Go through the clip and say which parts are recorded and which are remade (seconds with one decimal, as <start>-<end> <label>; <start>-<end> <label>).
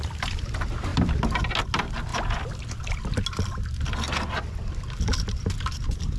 0.0-6.2 recorded